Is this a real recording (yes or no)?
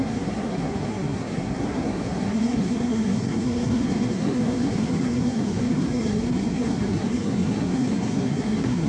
no